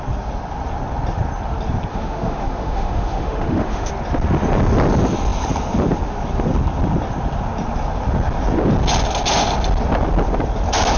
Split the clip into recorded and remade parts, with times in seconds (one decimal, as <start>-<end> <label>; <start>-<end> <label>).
0.0-1.9 recorded; 1.9-3.9 remade; 3.9-11.0 recorded